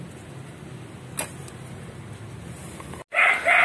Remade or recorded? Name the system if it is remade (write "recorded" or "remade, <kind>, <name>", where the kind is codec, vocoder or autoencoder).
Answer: recorded